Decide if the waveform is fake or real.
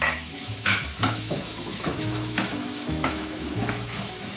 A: fake